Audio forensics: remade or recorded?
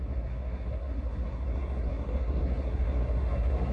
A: remade